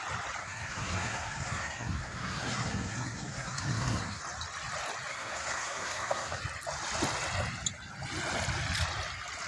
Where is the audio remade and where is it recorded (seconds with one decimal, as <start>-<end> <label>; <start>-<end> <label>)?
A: 0.0-0.4 recorded; 0.4-4.2 remade; 4.2-5.1 recorded; 5.1-6.4 remade; 6.4-9.5 recorded